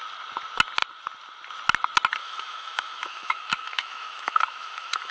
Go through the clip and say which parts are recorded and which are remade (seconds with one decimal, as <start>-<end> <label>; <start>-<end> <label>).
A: 0.0-2.2 recorded; 2.2-5.1 remade